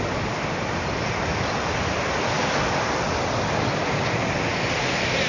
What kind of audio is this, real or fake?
real